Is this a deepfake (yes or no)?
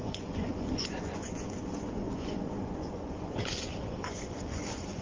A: yes